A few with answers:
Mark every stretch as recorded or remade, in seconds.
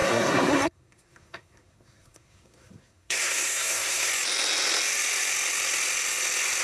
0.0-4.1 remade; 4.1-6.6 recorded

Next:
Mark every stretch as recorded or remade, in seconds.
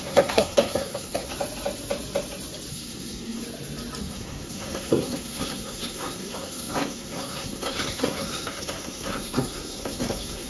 0.0-1.3 remade; 1.3-2.7 recorded; 2.7-3.4 remade; 3.4-4.0 recorded; 4.0-10.5 remade